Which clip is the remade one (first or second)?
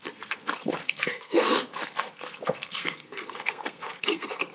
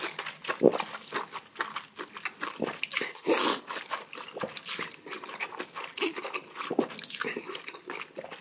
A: first